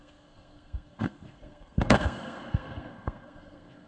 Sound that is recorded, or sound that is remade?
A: remade